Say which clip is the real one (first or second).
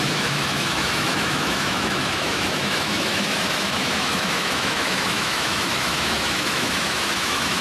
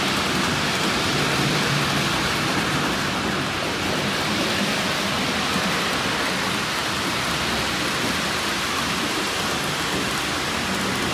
second